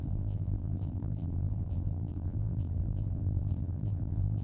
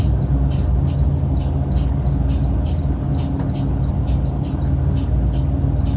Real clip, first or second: second